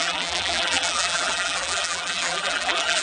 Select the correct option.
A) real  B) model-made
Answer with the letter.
B